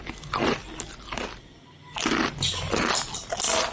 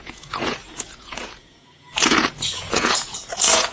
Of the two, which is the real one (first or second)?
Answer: first